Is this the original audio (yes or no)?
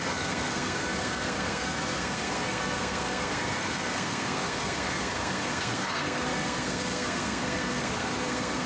no